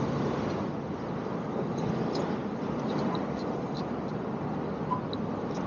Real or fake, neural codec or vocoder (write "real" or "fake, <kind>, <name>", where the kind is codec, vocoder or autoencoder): real